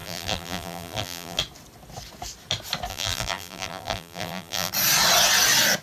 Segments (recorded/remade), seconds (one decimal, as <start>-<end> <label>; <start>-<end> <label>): 0.0-1.4 remade; 1.4-2.9 recorded; 2.9-4.7 remade; 4.7-5.8 recorded

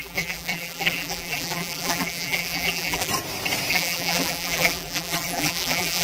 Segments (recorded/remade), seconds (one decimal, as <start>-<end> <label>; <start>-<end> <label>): 0.0-3.1 remade; 3.1-3.7 recorded; 3.7-6.0 remade

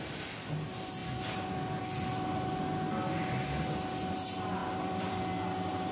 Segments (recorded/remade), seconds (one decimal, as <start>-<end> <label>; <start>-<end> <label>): 0.0-4.6 recorded; 4.6-5.2 remade; 5.2-5.9 recorded

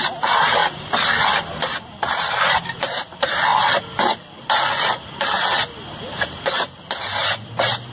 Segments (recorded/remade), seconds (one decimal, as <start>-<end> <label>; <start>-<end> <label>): 0.0-0.6 recorded; 0.6-2.6 remade; 2.6-7.9 recorded

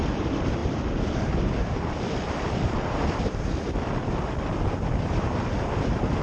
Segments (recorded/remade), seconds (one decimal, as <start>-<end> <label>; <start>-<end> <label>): 0.0-6.2 remade

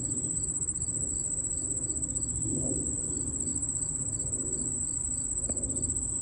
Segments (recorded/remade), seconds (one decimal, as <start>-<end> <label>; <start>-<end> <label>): 0.0-6.2 recorded